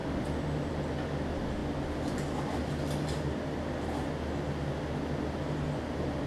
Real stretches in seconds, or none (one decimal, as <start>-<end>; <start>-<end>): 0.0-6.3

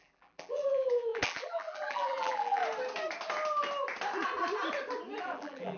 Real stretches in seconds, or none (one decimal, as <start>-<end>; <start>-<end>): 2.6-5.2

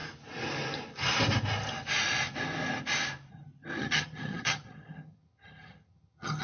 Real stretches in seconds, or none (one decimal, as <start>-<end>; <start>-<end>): 0.0-3.8

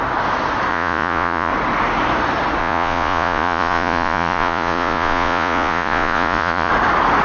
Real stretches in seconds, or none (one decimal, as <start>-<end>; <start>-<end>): 0.0-0.7; 1.5-2.6; 6.7-7.2

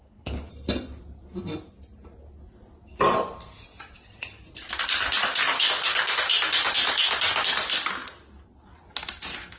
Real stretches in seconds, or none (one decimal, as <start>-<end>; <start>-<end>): 0.5-9.6